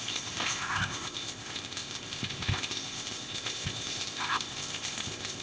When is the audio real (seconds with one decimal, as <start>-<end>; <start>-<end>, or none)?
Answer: none